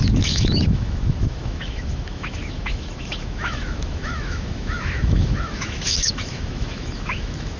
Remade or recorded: remade